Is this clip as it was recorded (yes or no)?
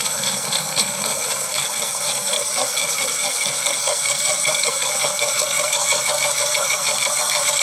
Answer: no